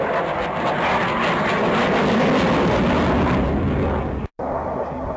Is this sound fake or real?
real